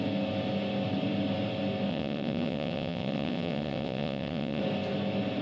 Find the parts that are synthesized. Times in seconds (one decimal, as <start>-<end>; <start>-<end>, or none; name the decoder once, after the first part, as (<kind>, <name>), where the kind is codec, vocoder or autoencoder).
1.9-4.6 (vocoder, WaveNeXt)